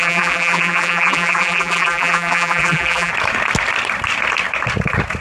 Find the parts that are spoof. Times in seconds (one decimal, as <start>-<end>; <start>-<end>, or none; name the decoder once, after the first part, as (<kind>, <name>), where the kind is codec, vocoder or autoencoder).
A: 0.0-3.1 (vocoder, BigVGAN v2)